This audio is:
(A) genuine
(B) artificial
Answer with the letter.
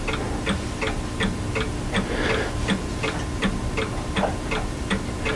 A